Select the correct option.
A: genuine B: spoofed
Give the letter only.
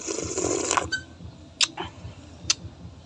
A